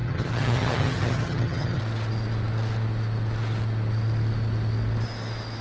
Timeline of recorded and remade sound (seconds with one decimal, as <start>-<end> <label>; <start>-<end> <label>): 0.0-1.8 remade; 1.8-5.6 recorded